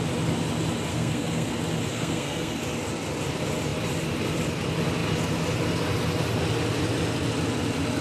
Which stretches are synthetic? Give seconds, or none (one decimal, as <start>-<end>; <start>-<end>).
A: 0.9-1.5; 1.9-2.5